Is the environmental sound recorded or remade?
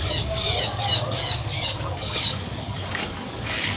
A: remade